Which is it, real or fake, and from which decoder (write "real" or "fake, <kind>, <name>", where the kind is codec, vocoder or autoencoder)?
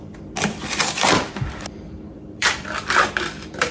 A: fake, vocoder, BigVGAN v2